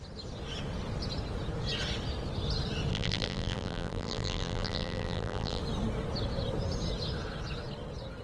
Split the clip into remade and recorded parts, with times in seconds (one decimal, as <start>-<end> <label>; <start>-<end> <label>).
0.0-2.9 recorded; 2.9-5.6 remade; 5.6-8.2 recorded